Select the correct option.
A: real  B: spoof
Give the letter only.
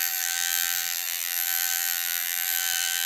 B